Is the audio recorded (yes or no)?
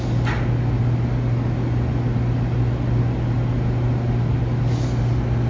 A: yes